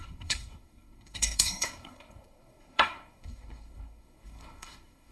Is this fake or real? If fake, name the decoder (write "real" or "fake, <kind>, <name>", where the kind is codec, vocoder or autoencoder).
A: fake, codec, SNAC